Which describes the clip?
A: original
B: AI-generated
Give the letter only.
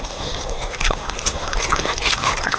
B